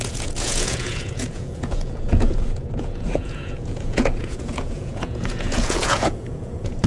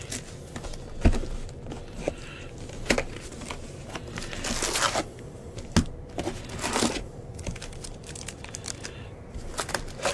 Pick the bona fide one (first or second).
second